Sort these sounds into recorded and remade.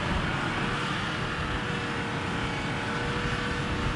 recorded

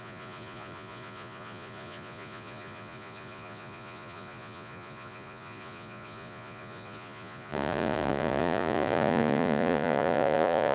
remade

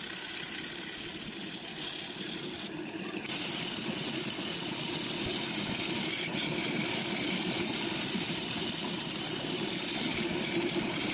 recorded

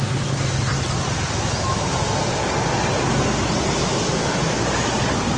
recorded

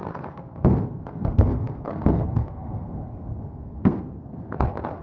remade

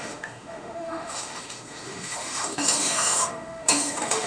remade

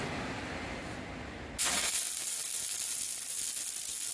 recorded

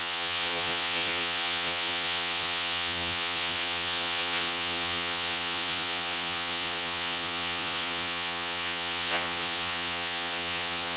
remade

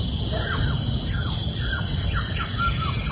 recorded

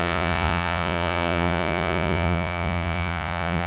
remade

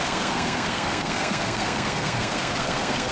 remade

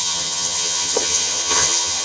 remade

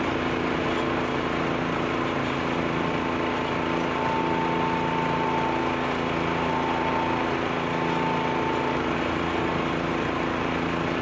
recorded